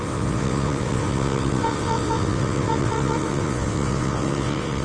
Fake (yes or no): yes